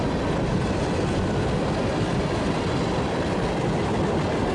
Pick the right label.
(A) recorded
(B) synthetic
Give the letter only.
A